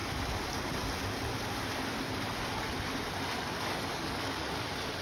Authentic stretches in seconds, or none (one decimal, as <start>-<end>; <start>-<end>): 0.0-3.9; 4.5-5.0